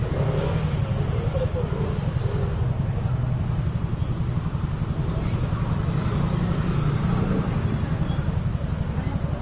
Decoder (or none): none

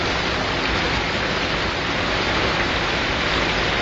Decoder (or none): vocoder, BigVGAN v2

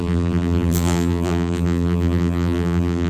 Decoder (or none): vocoder, BigVGAN v2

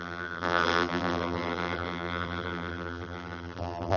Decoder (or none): vocoder, BigVGAN v2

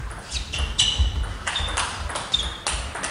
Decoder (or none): none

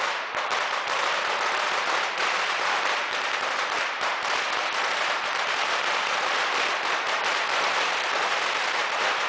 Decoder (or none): vocoder, BigVGAN v2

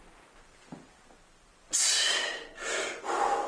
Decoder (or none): none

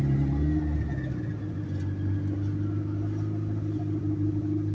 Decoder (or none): none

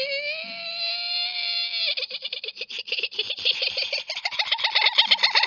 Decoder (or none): none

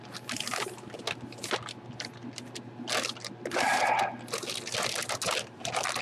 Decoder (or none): none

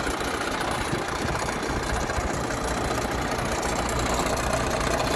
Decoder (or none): none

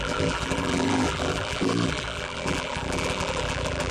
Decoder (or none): vocoder, BigVGAN v2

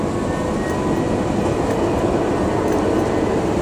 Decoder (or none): none